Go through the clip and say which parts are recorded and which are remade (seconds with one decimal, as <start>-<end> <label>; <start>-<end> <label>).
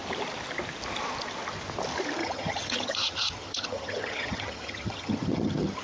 0.0-2.2 recorded; 2.2-5.8 remade